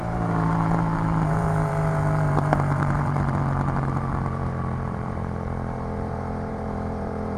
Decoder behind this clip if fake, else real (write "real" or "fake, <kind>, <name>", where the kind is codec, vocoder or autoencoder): fake, vocoder, BigVGAN v2